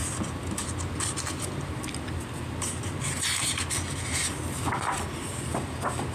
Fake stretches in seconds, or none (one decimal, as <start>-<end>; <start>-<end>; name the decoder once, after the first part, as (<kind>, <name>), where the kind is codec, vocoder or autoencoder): none